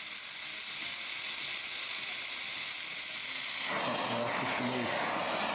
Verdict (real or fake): real